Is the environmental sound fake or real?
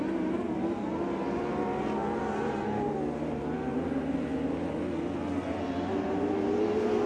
real